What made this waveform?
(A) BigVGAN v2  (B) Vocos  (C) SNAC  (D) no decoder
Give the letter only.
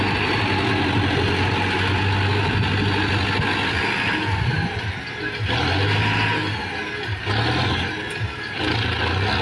D